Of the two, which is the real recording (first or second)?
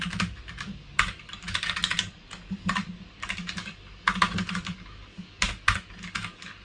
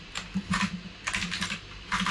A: second